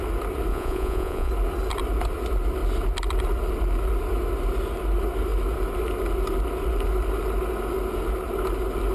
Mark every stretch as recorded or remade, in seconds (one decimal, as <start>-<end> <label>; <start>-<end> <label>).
0.0-0.5 recorded; 0.5-1.3 remade; 1.3-8.9 recorded